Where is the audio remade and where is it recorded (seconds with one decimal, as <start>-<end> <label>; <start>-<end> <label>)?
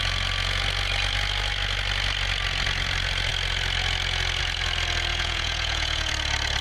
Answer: 0.0-5.1 recorded; 5.1-6.1 remade; 6.1-6.6 recorded